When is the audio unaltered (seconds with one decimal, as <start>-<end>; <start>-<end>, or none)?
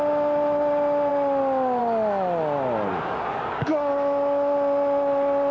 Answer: 0.0-2.9; 3.9-5.5